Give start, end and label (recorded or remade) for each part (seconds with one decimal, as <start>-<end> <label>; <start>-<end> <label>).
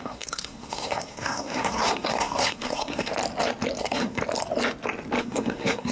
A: 0.0-3.1 remade; 3.1-3.8 recorded; 3.8-4.2 remade; 4.2-5.2 recorded; 5.2-5.9 remade